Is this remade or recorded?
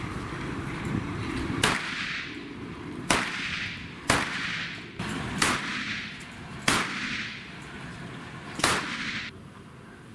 remade